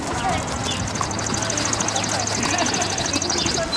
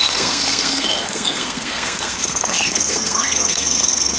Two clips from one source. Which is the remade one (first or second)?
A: second